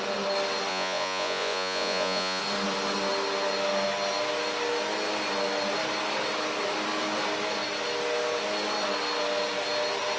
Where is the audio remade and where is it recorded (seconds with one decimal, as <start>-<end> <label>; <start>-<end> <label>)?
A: 0.0-0.7 recorded; 0.7-2.4 remade; 2.4-10.2 recorded